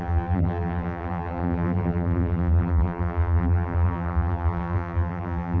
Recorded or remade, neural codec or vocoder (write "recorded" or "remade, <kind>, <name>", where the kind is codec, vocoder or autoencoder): remade, vocoder, BigVGAN v2